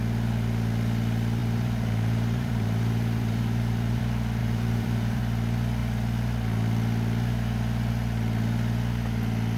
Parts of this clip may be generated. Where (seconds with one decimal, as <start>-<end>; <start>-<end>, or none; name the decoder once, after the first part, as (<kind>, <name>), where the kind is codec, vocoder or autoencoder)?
1.4-4.0 (vocoder, BigVGAN v2); 4.4-5.2